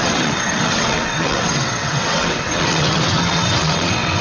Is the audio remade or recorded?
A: remade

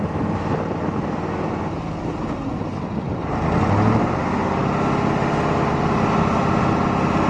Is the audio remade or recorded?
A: recorded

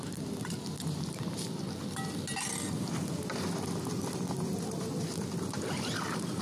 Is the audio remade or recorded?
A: recorded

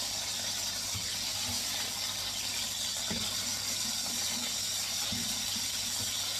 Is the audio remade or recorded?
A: recorded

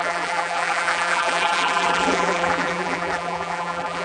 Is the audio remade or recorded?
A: remade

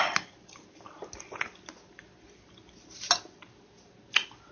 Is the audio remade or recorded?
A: recorded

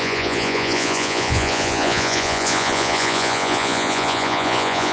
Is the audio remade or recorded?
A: remade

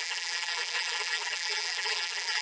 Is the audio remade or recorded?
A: remade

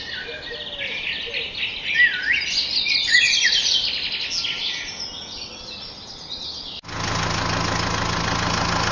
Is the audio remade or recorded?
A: recorded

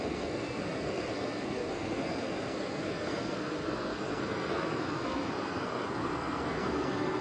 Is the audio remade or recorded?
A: remade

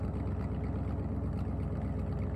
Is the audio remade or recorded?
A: recorded